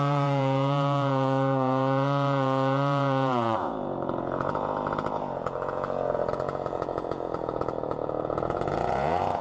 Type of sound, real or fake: fake